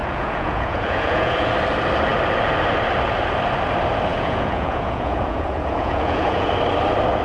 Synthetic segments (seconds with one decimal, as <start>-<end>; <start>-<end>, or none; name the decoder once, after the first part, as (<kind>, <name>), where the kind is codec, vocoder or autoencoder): 0.0-1.5 (vocoder, Vocos); 4.1-6.5